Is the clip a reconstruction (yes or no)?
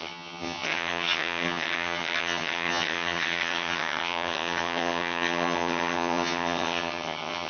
yes